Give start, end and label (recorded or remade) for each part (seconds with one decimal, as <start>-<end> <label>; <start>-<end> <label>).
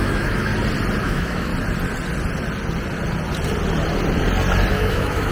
0.0-0.5 remade; 0.5-1.0 recorded; 1.0-1.5 remade; 1.5-4.7 recorded; 4.7-5.3 remade